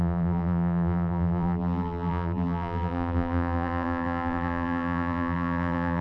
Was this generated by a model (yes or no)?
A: yes